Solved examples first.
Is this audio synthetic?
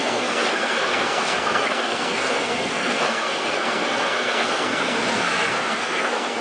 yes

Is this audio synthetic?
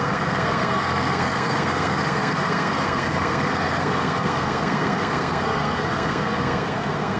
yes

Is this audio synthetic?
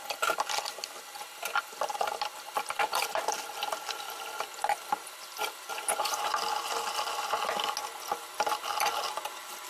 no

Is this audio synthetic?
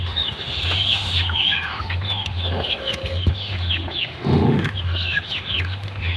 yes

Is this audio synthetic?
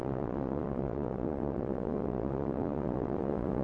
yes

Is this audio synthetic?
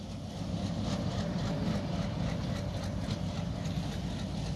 no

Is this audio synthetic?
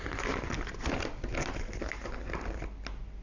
no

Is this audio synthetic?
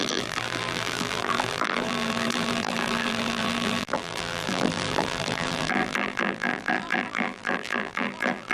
yes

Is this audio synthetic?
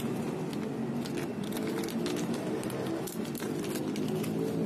no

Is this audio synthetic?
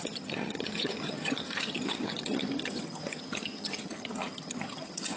yes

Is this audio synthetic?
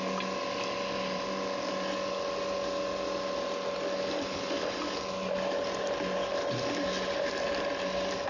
no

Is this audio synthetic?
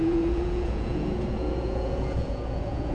yes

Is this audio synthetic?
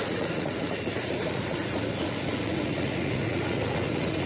yes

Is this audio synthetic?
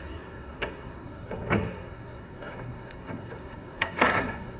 yes